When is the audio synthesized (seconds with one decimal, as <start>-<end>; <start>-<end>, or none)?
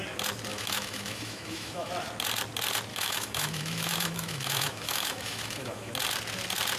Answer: 0.5-1.9; 2.9-5.9